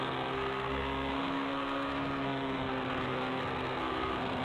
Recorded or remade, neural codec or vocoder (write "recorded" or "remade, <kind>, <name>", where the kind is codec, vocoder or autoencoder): remade, codec, SNAC